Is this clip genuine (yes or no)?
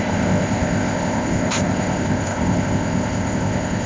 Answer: no